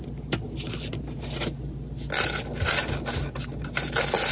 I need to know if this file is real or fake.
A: real